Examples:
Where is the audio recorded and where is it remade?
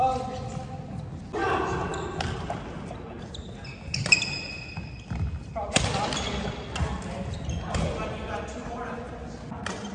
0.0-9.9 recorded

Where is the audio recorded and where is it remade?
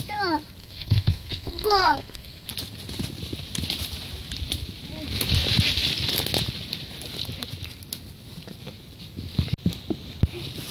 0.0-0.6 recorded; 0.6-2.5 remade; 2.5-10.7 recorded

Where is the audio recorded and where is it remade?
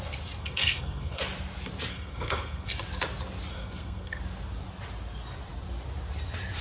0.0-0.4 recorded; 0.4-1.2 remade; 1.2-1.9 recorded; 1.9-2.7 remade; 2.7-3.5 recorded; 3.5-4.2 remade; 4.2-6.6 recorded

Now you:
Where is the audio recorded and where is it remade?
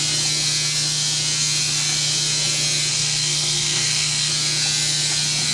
0.0-2.9 recorded; 2.9-4.3 remade; 4.3-5.5 recorded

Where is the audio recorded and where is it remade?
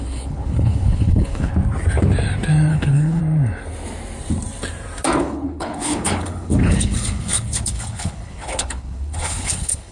0.0-1.5 remade; 1.5-2.7 recorded; 2.7-3.2 remade; 3.2-5.2 recorded; 5.2-9.9 remade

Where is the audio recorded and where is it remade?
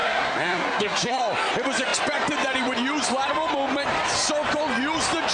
0.0-1.2 remade; 1.2-5.3 recorded